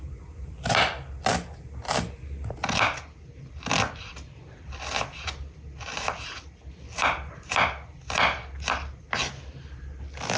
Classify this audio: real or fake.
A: real